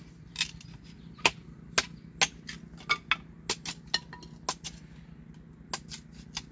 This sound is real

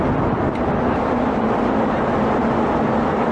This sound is real